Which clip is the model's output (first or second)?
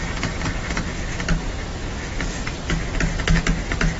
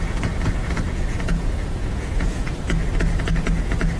second